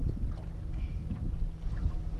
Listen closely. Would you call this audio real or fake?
real